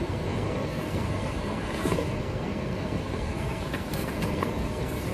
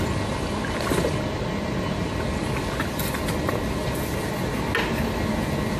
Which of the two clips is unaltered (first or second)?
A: second